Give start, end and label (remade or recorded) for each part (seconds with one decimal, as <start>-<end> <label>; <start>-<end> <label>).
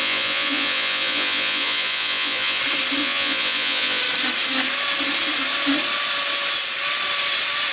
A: 0.0-2.6 remade; 2.6-3.0 recorded; 3.0-4.0 remade; 4.0-7.7 recorded